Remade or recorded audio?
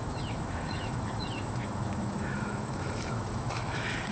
remade